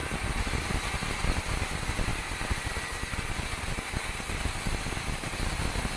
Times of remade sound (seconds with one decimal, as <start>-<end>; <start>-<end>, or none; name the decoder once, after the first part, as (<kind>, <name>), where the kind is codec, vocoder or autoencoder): 0.0-0.7 (vocoder, BigVGAN v2); 2.1-3.4